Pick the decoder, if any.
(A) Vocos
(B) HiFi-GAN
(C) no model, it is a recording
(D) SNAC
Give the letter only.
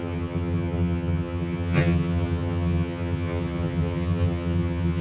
B